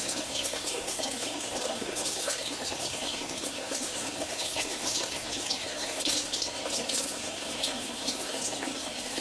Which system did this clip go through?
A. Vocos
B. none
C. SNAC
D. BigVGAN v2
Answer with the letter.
C